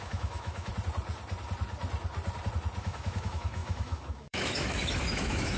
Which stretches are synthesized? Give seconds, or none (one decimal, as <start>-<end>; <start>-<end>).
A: 0.0-0.7; 2.8-5.6